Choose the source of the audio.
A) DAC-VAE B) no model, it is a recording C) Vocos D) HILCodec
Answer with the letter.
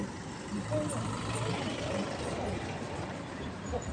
B